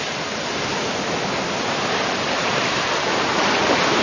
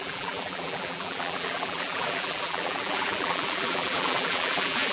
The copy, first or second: second